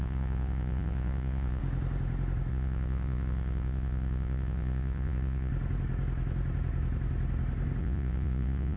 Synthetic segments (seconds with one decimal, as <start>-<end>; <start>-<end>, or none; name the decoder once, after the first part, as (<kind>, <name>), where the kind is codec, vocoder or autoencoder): 0.0-1.6 (vocoder, Vocos); 2.5-5.5; 7.8-8.8